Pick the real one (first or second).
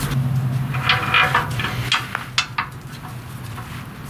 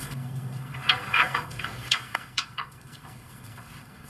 first